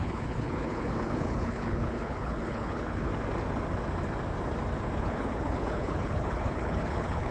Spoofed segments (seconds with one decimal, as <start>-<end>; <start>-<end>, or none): 0.0-3.1; 5.0-7.3